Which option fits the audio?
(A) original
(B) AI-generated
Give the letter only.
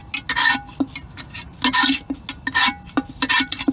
A